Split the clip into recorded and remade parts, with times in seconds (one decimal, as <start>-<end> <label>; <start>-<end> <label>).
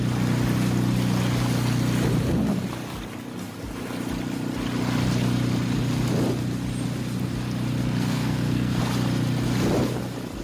0.0-7.8 recorded; 7.8-8.8 remade; 8.8-10.4 recorded